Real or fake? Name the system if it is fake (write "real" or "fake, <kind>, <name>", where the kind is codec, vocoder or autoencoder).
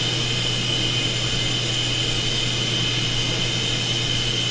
real